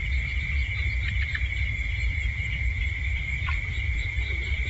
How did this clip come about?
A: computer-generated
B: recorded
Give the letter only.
A